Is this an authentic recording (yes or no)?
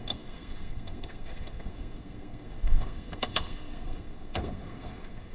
no